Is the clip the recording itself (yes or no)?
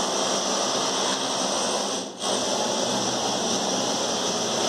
yes